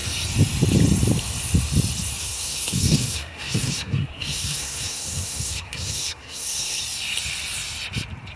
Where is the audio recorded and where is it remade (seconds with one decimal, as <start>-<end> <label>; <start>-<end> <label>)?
0.0-2.2 recorded; 2.2-6.8 remade; 6.8-8.4 recorded

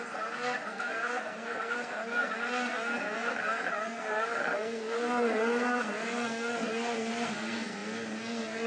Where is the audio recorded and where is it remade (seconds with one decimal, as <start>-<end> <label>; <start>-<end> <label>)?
0.0-8.7 remade

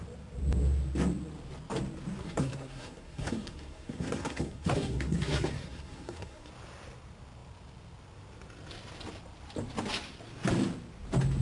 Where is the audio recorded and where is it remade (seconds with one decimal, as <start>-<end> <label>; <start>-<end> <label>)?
0.0-2.2 recorded; 2.2-6.5 remade; 6.5-11.4 recorded

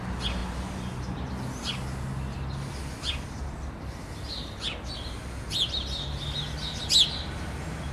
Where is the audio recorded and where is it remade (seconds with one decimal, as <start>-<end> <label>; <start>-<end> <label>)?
0.0-7.9 recorded

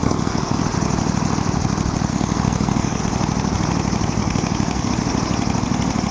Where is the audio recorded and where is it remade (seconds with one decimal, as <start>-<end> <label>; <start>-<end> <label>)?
0.0-0.6 remade; 0.6-2.1 recorded; 2.1-3.0 remade; 3.0-4.2 recorded; 4.2-4.9 remade; 4.9-6.1 recorded

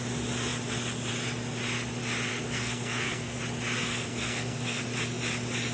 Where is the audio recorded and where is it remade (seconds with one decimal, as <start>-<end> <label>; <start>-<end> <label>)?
0.0-2.3 recorded; 2.3-3.4 remade; 3.4-3.8 recorded; 3.8-4.8 remade; 4.8-5.7 recorded

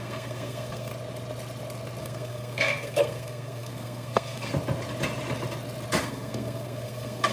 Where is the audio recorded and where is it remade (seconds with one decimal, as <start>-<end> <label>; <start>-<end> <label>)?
0.0-0.9 remade; 0.9-2.0 recorded; 2.0-4.5 remade; 4.5-6.0 recorded; 6.0-7.3 remade